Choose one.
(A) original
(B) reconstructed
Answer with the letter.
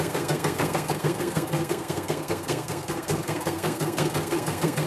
B